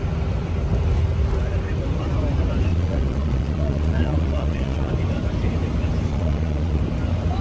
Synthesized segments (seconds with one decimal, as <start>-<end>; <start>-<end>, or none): 2.7-4.9; 6.1-6.8